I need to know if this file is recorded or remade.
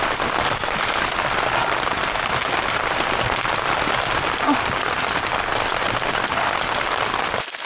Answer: recorded